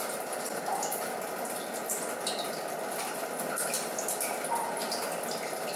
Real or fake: real